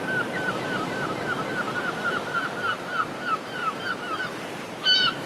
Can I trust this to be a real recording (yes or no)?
no